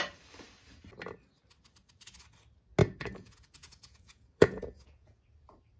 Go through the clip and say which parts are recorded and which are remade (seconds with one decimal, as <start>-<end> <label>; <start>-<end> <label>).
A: 0.0-2.8 recorded; 2.8-5.2 remade; 5.2-5.8 recorded